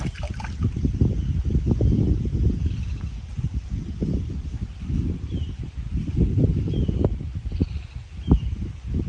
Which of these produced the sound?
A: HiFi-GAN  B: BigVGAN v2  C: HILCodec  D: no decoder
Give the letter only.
D